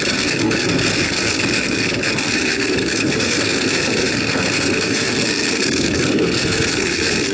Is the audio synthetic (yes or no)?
yes